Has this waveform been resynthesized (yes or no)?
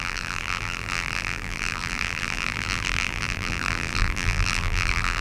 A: yes